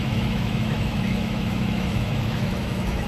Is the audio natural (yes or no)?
no